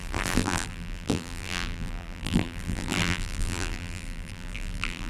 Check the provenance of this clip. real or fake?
fake